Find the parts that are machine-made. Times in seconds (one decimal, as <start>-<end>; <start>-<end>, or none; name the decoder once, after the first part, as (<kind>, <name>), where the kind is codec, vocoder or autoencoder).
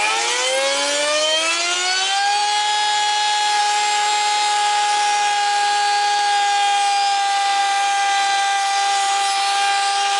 1.0-1.5 (autoencoder, DAC-VAE)